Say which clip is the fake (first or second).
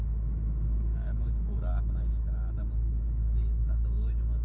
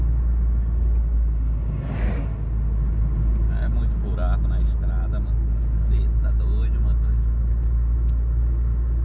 first